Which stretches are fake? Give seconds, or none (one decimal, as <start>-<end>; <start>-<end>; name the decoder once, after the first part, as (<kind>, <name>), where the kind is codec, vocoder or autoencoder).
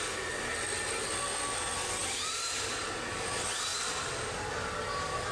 2.0-2.7 (vocoder, BigVGAN v2)